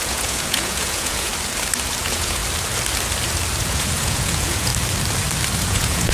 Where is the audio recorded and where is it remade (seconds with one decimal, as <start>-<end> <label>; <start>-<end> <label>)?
0.0-1.3 remade; 1.3-2.0 recorded; 2.0-2.4 remade; 2.4-3.6 recorded; 3.6-4.7 remade; 4.7-5.6 recorded; 5.6-6.1 remade